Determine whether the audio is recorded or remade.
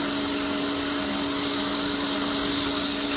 recorded